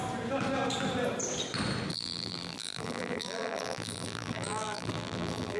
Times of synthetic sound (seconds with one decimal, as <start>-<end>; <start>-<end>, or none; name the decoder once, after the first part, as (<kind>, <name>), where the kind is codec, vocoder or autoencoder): 1.9-5.6 (vocoder, BigVGAN v2)